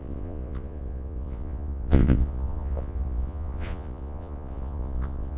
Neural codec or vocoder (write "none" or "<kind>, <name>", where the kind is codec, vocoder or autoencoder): vocoder, Vocos